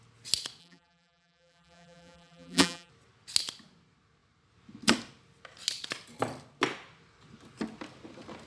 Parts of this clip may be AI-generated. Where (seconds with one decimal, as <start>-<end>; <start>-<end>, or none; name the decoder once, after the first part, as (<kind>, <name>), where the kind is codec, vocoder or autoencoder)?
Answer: 0.6-2.9 (vocoder, BigVGAN v2)